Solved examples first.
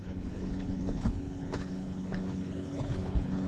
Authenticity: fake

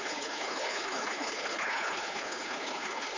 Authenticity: fake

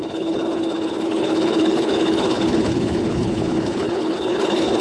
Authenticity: fake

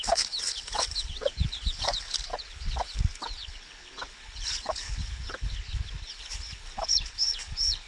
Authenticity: fake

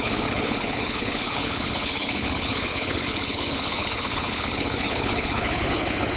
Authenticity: fake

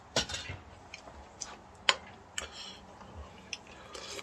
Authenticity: real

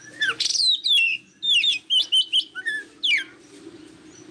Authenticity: real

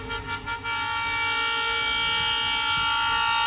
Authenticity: real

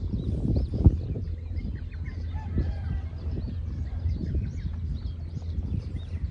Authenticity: real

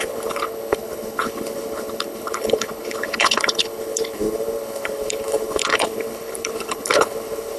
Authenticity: fake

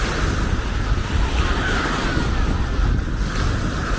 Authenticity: real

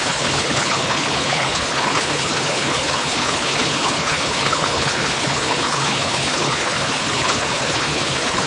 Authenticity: fake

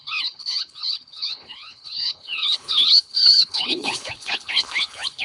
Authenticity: fake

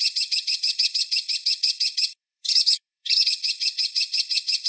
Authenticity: fake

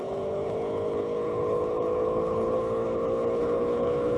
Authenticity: fake